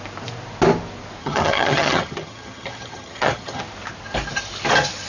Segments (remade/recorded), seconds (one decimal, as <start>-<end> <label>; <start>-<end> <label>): 0.0-1.2 recorded; 1.2-3.6 remade; 3.6-5.1 recorded